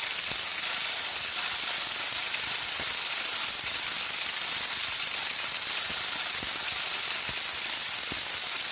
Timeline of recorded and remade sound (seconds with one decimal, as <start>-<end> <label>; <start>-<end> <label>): 0.0-8.7 recorded